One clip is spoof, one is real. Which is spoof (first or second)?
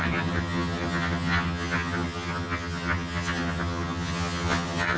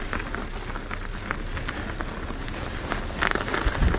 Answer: first